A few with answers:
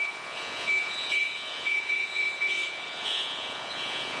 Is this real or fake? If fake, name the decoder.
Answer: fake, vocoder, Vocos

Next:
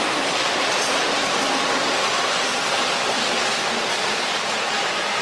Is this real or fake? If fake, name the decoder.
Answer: real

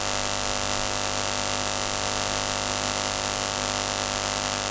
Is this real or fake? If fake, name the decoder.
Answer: real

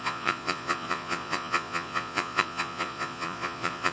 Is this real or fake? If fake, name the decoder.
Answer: fake, vocoder, Vocos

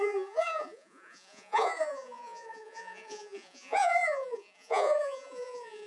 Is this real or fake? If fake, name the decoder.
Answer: fake, vocoder, Vocos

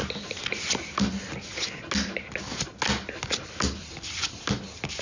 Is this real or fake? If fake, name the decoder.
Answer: real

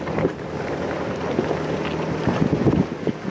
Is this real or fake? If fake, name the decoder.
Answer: real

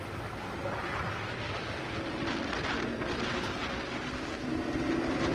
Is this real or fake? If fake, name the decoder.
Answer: real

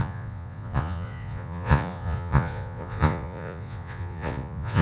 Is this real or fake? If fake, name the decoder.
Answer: fake, vocoder, Vocos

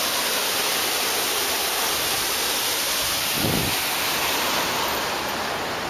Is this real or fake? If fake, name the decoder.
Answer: real